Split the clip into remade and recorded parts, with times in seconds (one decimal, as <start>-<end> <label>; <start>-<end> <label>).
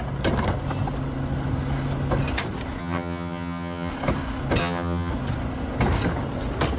0.0-2.8 recorded; 2.8-3.9 remade; 3.9-4.6 recorded; 4.6-5.1 remade; 5.1-6.8 recorded